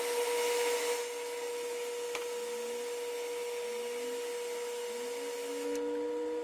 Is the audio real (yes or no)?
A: yes